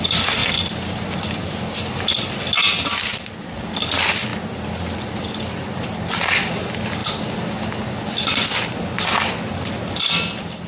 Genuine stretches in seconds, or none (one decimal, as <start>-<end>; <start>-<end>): 4.3-5.1; 7.0-10.0